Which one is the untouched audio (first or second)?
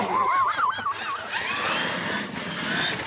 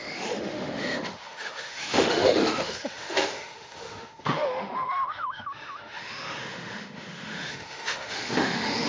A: first